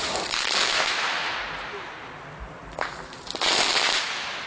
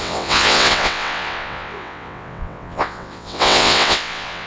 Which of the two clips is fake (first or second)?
second